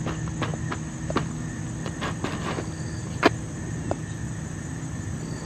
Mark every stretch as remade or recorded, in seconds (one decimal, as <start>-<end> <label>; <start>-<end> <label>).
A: 0.0-5.5 recorded